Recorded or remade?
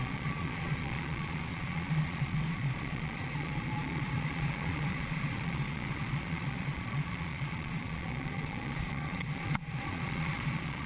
remade